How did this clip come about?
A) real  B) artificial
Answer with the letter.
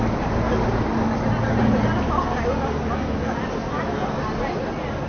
A